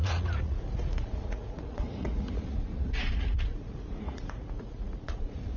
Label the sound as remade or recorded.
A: remade